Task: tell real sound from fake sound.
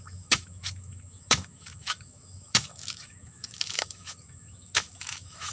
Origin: fake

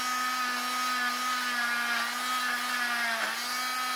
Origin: real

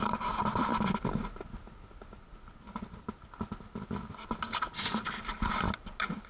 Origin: real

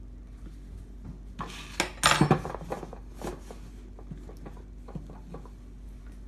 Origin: real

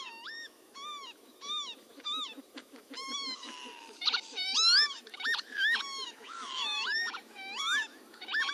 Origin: fake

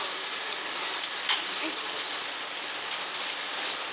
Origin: real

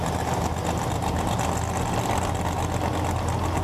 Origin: real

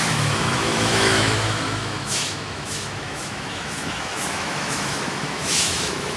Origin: fake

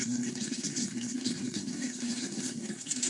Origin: fake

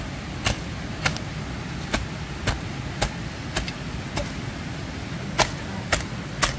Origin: real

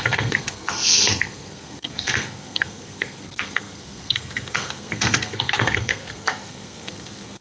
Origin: fake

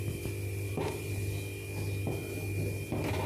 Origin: real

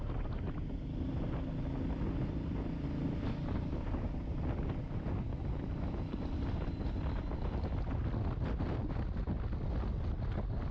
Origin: real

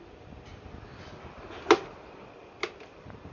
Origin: real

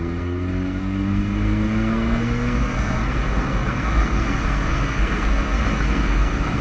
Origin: fake